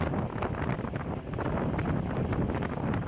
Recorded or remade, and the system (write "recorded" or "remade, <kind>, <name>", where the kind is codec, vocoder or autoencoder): recorded